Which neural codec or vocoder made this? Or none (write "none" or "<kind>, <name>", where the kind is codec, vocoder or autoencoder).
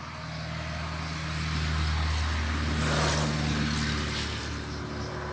none